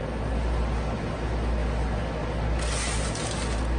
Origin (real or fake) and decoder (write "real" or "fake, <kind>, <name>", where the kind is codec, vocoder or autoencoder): real